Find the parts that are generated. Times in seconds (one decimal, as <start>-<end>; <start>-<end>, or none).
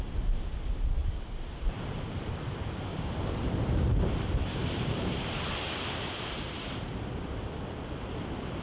1.0-2.3; 2.9-3.5; 4.6-7.1